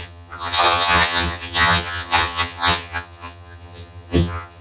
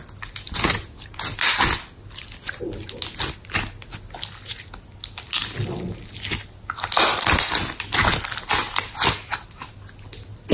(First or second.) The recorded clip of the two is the second